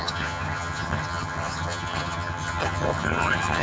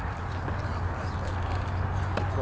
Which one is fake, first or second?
first